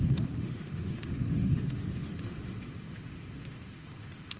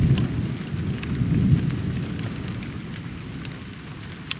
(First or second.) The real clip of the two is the second